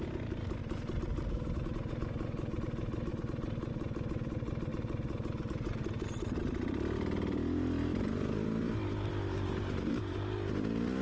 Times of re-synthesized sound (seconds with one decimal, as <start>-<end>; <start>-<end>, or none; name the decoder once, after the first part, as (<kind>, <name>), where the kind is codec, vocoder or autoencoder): none